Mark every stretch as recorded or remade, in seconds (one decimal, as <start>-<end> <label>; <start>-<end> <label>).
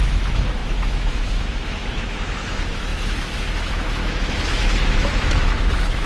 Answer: 0.0-6.1 remade